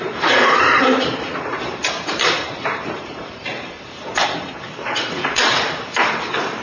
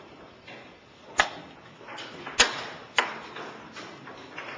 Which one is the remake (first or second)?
first